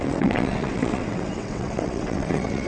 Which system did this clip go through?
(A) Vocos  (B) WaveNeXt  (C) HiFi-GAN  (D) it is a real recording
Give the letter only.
B